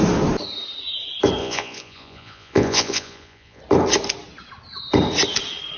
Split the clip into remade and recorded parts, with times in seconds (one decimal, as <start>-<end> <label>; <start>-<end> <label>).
0.0-1.4 recorded; 1.4-3.6 remade; 3.6-5.8 recorded